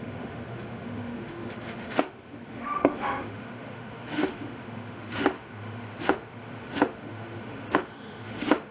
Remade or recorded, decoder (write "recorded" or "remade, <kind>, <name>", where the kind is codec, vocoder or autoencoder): remade, autoencoder, DAC-VAE